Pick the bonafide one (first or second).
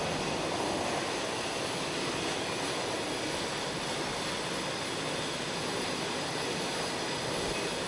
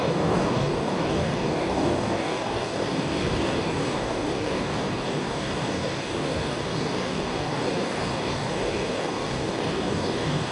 first